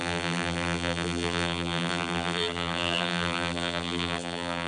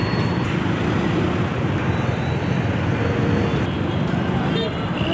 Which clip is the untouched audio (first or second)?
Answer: second